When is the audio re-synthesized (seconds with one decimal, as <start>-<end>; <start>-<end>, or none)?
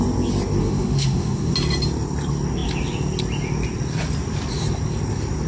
0.6-1.5